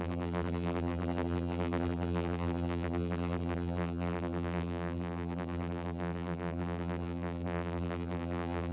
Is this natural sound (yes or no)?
no